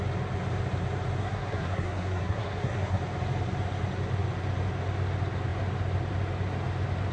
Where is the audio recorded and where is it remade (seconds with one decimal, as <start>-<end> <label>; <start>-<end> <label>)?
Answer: 0.0-1.2 recorded; 1.2-3.0 remade; 3.0-7.1 recorded